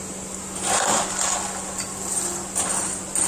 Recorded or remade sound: recorded